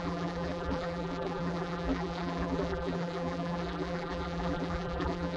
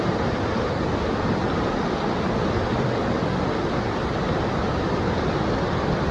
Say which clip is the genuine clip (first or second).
second